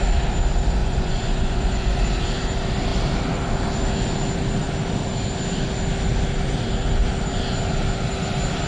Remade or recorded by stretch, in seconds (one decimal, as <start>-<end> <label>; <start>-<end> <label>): 0.0-0.8 recorded; 0.8-2.0 remade; 2.0-8.7 recorded

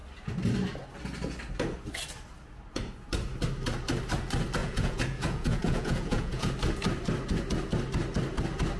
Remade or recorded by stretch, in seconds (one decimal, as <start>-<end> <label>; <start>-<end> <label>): 0.0-4.6 recorded; 4.6-6.5 remade; 6.5-8.8 recorded